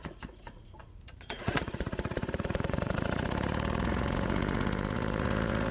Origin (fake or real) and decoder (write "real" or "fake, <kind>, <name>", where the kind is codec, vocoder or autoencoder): fake, vocoder, Vocos